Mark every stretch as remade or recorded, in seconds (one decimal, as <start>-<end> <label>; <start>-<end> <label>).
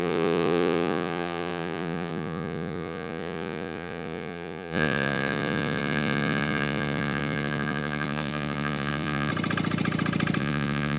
0.0-9.3 remade; 9.3-10.4 recorded; 10.4-11.0 remade